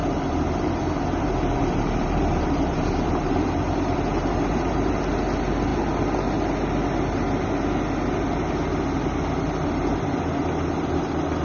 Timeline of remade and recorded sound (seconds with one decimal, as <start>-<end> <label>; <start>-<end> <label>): 0.0-5.0 remade; 5.0-11.4 recorded